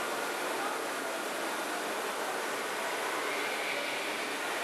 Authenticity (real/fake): real